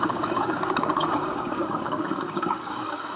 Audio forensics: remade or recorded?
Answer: remade